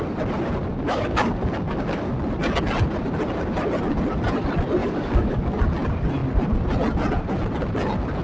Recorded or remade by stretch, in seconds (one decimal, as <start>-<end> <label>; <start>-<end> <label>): 0.0-0.7 recorded; 0.7-2.1 remade; 2.1-4.8 recorded; 4.8-5.4 remade; 5.4-8.2 recorded